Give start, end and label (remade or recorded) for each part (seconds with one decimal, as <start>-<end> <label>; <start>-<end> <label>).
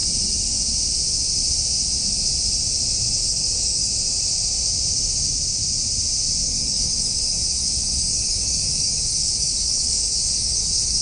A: 0.0-3.2 recorded; 3.2-3.9 remade; 3.9-6.4 recorded; 6.4-11.0 remade